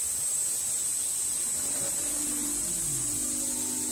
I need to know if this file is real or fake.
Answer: real